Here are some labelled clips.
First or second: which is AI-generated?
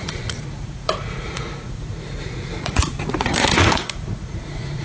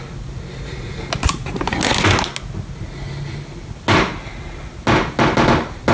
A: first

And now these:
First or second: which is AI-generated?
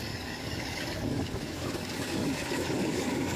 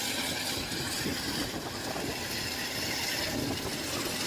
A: first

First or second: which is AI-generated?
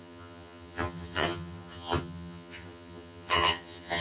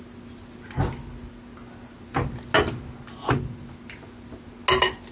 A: first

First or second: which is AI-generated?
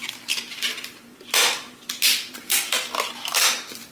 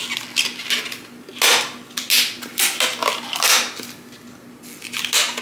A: first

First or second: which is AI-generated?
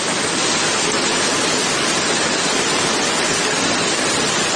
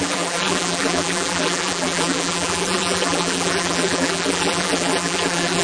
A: second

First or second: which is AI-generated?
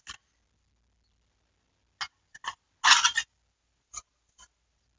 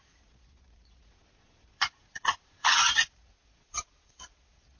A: second